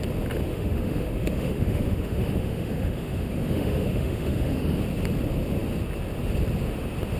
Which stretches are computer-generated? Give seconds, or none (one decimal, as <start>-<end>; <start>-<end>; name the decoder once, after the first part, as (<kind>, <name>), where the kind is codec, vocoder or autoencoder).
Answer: 0.5-4.8 (autoencoder, DAC-VAE)